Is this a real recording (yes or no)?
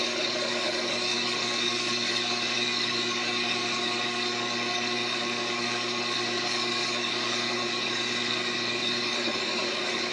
no